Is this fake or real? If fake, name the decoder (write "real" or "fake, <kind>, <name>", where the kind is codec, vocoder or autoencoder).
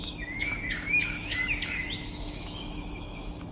fake, autoencoder, DAC-VAE